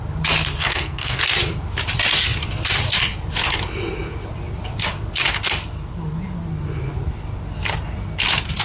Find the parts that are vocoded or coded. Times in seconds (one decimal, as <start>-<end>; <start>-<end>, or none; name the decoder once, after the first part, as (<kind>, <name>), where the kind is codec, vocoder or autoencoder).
0.6-1.2 (codec, SNAC)